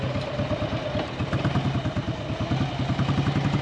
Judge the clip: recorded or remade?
recorded